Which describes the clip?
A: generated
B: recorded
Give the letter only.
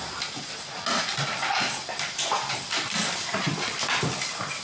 B